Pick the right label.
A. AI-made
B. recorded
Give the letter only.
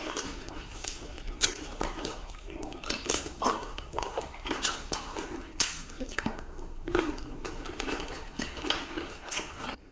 A